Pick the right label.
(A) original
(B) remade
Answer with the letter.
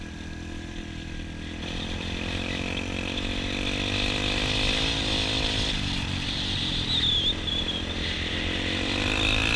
A